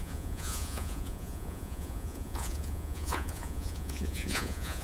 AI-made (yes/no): yes